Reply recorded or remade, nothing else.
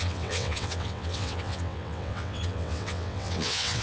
remade